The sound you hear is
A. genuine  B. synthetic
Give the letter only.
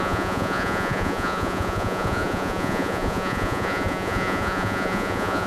B